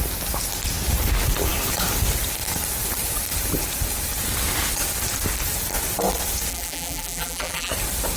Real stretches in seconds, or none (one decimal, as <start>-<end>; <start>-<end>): 0.0-6.5; 7.7-8.2